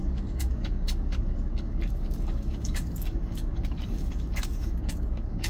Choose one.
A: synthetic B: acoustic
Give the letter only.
A